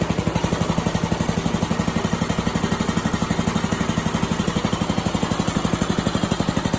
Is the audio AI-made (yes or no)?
no